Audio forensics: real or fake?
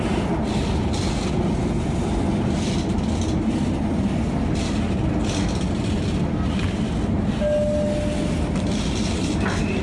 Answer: real